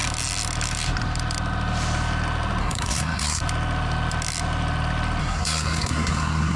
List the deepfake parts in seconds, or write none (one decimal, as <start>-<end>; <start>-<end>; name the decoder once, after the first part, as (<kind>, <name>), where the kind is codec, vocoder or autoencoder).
2.6-3.4 (codec, SNAC); 5.2-6.6